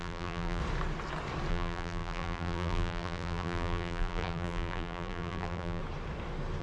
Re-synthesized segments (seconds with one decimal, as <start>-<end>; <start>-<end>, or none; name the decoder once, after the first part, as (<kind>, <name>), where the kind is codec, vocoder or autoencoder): 0.0-0.6 (vocoder, BigVGAN v2); 1.5-5.8